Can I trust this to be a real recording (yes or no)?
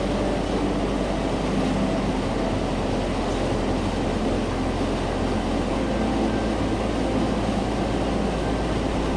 yes